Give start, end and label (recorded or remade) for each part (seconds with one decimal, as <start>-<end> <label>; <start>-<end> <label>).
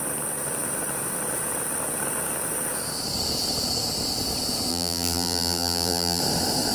0.0-4.7 recorded; 4.7-6.2 remade; 6.2-6.7 recorded